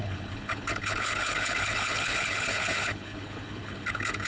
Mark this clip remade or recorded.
remade